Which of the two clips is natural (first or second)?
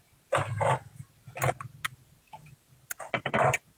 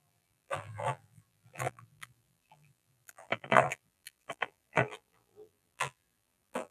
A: first